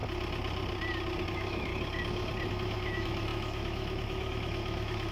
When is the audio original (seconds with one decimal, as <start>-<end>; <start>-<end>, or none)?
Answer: 0.0-1.2; 1.7-2.5